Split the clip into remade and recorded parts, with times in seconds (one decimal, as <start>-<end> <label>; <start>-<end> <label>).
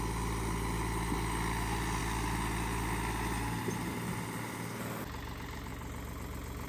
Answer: 0.0-6.7 recorded